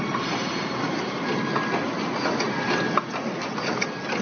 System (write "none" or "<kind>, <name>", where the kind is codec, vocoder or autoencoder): none